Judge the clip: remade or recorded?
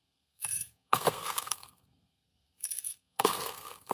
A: remade